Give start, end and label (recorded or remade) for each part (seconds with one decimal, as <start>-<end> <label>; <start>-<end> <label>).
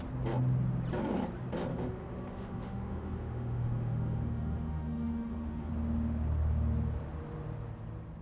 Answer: 0.0-1.7 recorded; 1.7-5.7 remade; 5.7-8.2 recorded